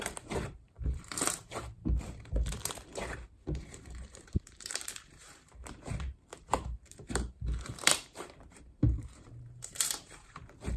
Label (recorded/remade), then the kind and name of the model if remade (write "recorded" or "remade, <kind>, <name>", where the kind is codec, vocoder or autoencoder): remade, vocoder, BigVGAN v2